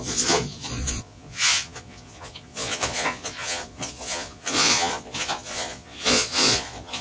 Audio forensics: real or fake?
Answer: fake